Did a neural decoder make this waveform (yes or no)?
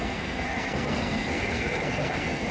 yes